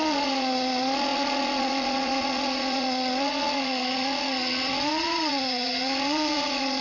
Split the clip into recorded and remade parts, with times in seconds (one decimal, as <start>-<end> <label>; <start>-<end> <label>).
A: 0.0-6.8 remade